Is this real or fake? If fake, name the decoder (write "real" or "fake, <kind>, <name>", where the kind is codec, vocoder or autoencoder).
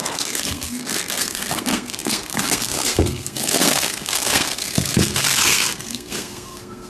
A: fake, codec, SNAC